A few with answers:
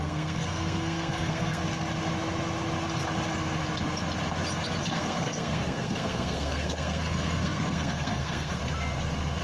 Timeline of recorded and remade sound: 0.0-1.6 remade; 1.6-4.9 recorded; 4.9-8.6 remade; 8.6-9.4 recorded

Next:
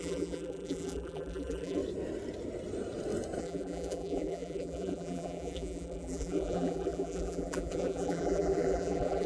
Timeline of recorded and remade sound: 0.0-1.8 remade; 1.8-3.4 recorded; 3.4-9.3 remade

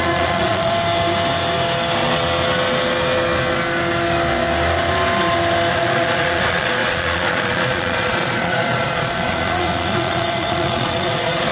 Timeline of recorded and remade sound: 0.0-0.7 remade; 0.7-5.7 recorded; 5.7-11.5 remade

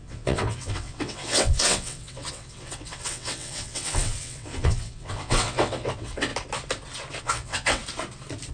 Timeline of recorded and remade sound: 0.0-6.3 remade; 6.3-7.2 recorded; 7.2-7.8 remade; 7.8-8.5 recorded

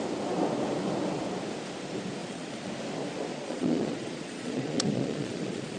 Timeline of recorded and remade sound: 0.0-2.2 recorded; 2.2-2.7 remade; 2.7-3.3 recorded; 3.3-5.8 remade

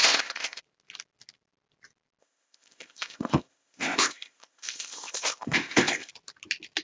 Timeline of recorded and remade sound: 0.0-0.6 remade; 0.6-2.2 recorded; 2.2-6.1 remade; 6.1-6.8 recorded